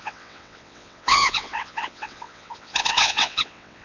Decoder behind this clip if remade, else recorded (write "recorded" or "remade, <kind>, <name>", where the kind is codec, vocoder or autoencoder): remade, vocoder, WaveNeXt